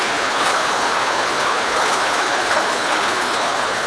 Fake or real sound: fake